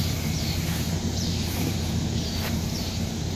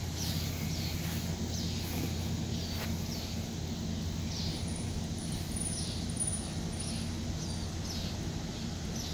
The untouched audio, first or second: second